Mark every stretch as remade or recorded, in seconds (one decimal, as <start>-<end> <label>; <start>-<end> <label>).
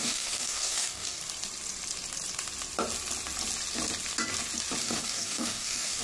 0.0-1.2 remade; 1.2-4.8 recorded; 4.8-6.0 remade